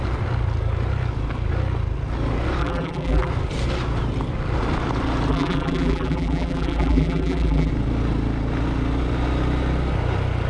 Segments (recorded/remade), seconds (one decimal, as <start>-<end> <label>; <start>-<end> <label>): 0.0-2.6 recorded; 2.6-3.3 remade; 3.3-5.3 recorded; 5.3-7.7 remade; 7.7-10.5 recorded